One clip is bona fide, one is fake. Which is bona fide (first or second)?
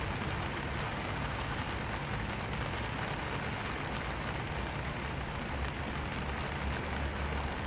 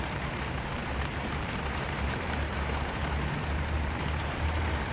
first